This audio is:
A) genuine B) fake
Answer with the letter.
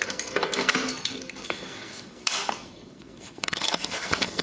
B